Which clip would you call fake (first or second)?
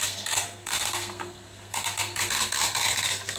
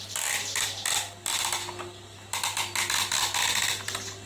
first